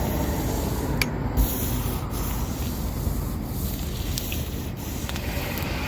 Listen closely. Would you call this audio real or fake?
real